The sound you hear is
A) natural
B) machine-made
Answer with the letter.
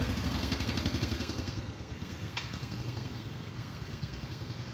B